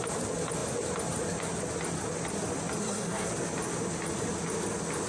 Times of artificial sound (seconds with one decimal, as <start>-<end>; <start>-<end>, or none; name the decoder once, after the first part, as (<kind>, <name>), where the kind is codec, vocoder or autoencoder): 2.8-3.3 (codec, SNAC)